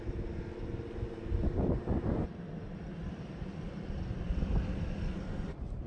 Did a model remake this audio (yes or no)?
no